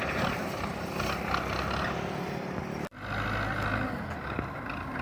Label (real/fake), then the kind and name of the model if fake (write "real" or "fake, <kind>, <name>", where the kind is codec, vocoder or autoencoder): real